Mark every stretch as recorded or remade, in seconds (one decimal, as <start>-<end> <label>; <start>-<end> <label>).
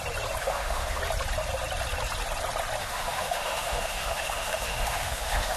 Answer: 0.0-0.4 recorded; 0.4-1.0 remade; 1.0-2.8 recorded; 2.8-5.6 remade